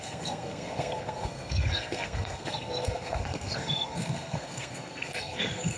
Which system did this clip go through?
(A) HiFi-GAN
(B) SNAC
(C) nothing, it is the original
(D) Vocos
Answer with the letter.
B